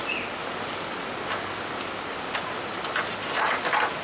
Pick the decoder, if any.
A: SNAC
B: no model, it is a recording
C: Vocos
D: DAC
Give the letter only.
B